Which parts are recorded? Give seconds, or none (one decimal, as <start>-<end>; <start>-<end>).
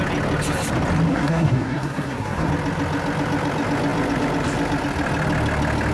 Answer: 0.0-1.1; 2.5-5.9